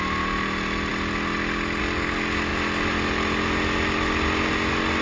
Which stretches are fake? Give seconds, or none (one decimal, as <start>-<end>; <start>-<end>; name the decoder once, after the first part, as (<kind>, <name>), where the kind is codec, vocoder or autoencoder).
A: none